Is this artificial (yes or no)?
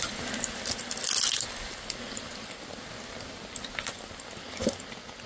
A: no